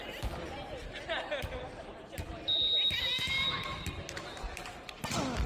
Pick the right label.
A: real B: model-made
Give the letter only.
A